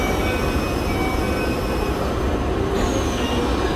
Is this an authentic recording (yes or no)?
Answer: yes